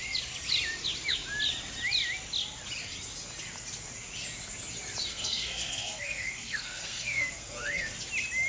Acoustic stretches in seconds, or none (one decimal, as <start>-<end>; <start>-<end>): 0.0-5.1; 7.9-8.5

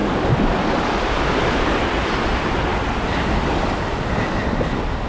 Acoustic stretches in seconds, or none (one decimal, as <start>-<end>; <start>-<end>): 0.0-5.1

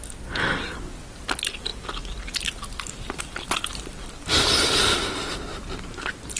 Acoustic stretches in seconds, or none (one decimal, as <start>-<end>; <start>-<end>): 0.0-6.4

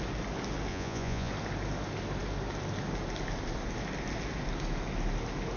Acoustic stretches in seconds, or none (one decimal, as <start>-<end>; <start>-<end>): 0.0-0.7; 1.3-5.6

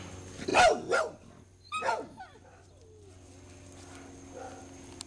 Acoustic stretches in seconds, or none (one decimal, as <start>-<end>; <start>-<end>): 0.0-5.1